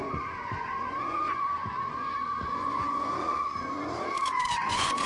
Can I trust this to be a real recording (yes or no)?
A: no